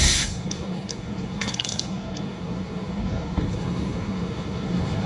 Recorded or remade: remade